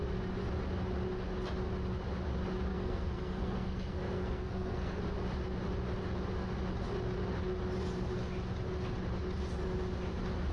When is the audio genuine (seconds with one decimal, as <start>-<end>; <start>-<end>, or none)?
0.0-2.7; 5.0-10.5